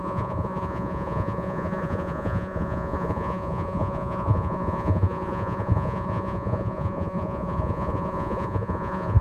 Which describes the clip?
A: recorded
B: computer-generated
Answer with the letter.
B